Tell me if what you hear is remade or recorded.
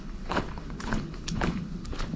remade